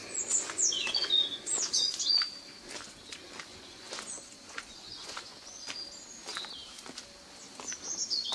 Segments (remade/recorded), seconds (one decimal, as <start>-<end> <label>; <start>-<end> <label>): 0.0-2.2 remade; 2.2-3.5 recorded; 3.5-5.7 remade; 5.7-8.3 recorded